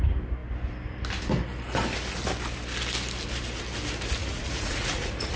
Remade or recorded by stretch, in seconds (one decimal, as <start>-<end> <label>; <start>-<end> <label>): 0.0-4.2 recorded; 4.2-5.4 remade